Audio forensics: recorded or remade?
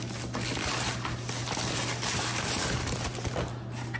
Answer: recorded